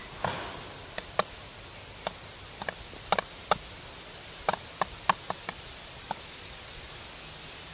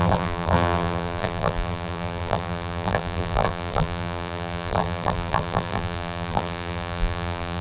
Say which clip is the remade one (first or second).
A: second